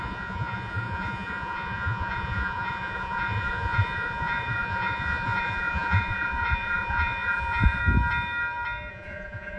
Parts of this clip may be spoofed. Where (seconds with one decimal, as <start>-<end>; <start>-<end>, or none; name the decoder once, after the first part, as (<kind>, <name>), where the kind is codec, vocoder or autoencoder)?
0.0-7.8 (vocoder, Vocos); 8.9-9.6